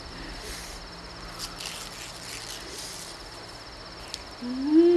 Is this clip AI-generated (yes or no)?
no